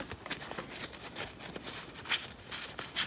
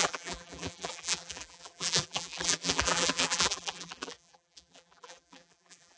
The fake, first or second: second